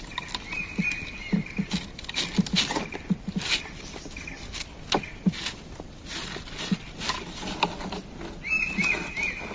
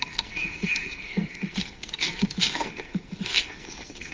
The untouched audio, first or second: first